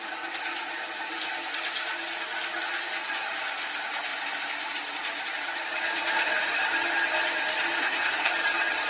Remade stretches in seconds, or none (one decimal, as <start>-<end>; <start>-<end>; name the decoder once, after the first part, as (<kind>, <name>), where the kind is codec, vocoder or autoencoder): 7.8-8.3 (codec, SNAC)